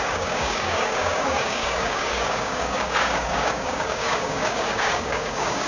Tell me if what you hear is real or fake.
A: fake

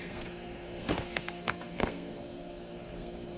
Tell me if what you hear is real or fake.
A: fake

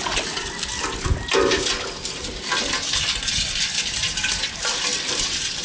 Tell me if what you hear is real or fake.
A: real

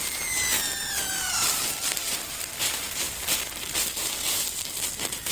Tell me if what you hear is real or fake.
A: fake